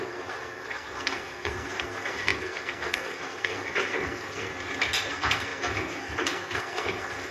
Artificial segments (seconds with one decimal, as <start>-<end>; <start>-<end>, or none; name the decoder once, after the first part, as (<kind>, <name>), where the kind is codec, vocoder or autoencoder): 0.0-4.5 (codec, SNAC); 5.1-7.3